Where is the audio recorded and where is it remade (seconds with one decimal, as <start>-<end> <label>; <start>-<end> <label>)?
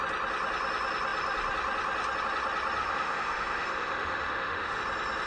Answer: 0.0-2.8 recorded; 2.8-4.8 remade; 4.8-5.3 recorded